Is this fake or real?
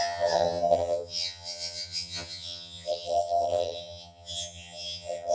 fake